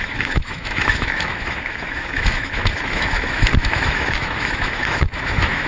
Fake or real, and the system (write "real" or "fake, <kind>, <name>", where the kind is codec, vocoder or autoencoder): fake, autoencoder, DAC-VAE